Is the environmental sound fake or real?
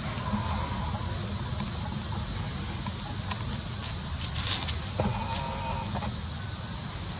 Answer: real